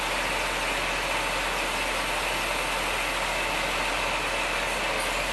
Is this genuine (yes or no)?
yes